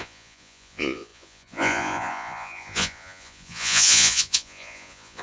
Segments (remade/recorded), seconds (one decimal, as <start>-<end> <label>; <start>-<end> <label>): 0.0-5.2 remade